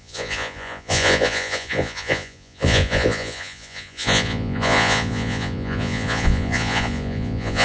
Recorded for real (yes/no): no